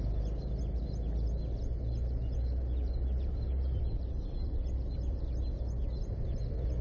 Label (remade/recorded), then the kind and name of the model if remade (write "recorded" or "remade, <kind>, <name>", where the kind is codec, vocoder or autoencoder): recorded